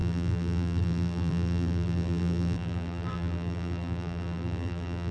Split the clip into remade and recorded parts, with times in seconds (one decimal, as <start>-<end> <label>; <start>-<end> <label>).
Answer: 0.0-5.1 remade